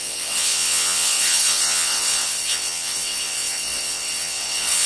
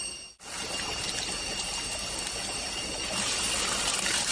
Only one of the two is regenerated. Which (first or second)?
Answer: first